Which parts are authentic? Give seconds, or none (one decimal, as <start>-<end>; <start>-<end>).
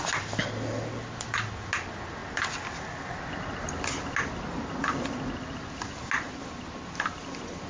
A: 0.0-7.7